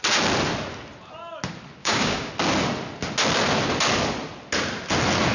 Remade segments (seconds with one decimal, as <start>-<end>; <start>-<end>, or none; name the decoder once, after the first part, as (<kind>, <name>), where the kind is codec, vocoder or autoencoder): 1.8-2.3 (codec, DAC)